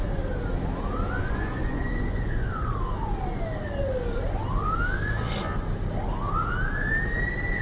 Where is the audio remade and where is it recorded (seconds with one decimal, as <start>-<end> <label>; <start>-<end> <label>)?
0.0-1.2 recorded; 1.2-2.7 remade; 2.7-7.6 recorded